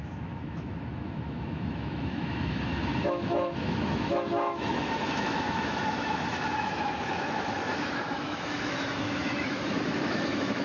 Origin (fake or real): fake